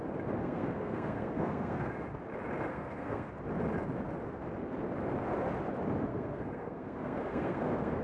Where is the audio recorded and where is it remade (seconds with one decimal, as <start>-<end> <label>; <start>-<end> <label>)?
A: 0.0-0.4 recorded; 0.4-1.9 remade; 1.9-2.7 recorded; 2.7-3.3 remade; 3.3-6.1 recorded; 6.1-8.0 remade